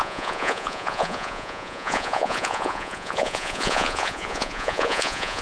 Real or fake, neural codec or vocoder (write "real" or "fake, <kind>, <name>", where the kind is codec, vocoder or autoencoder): fake, vocoder, Vocos